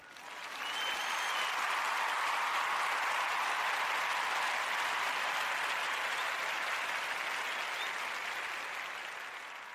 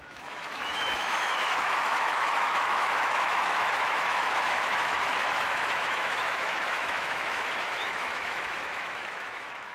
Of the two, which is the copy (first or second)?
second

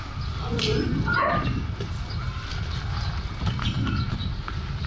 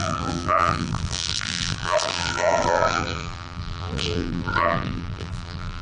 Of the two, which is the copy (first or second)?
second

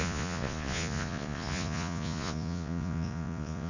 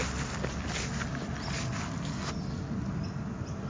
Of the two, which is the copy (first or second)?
first